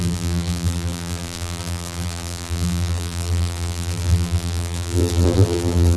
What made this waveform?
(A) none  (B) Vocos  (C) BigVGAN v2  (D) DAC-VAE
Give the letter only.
C